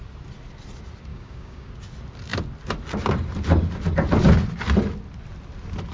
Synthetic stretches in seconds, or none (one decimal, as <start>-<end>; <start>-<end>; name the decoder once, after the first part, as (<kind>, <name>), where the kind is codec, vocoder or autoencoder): 1.1-1.7 (codec, DAC)